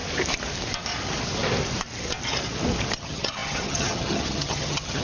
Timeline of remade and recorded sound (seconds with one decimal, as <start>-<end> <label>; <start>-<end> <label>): 0.0-3.0 recorded; 3.0-5.0 remade